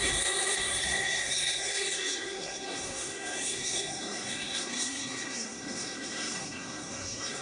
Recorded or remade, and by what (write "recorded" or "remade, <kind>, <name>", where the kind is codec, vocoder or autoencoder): remade, codec, SNAC